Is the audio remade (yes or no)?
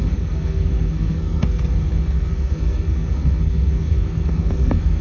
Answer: yes